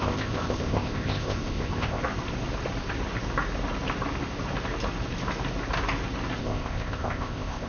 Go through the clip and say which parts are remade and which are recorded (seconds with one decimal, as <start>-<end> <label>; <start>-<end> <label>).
0.0-2.0 remade; 2.0-6.4 recorded; 6.4-7.7 remade